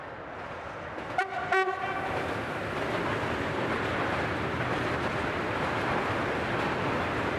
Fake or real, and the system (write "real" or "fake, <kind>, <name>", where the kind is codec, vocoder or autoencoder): real